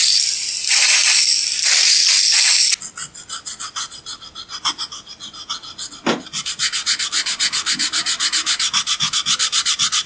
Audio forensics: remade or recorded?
recorded